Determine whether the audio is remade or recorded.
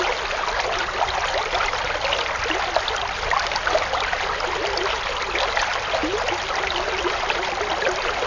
recorded